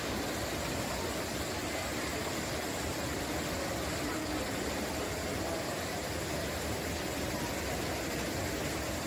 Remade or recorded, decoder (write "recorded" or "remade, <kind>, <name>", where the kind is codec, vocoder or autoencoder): recorded